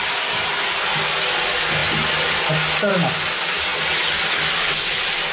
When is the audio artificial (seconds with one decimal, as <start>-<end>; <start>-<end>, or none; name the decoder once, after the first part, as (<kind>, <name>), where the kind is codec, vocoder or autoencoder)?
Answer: none